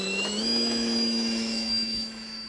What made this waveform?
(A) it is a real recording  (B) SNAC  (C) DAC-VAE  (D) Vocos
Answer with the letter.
C